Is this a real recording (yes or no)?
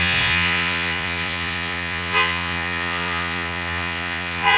no